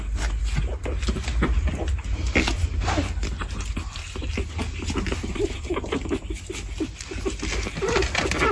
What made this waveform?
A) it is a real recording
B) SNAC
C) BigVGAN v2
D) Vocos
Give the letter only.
A